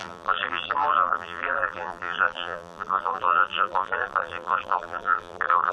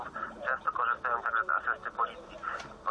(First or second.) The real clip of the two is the second